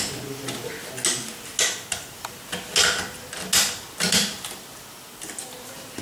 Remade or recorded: recorded